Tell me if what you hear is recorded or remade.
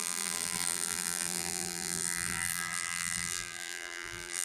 remade